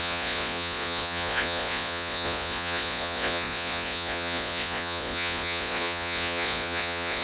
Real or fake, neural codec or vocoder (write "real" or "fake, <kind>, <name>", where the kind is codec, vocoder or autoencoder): fake, vocoder, Vocos